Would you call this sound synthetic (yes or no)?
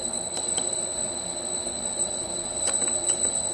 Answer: yes